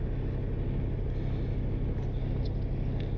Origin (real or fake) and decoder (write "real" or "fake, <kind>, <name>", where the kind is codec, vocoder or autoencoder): real